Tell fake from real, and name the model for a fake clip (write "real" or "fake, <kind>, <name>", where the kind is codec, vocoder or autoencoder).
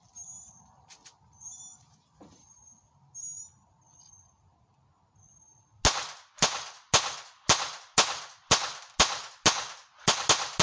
real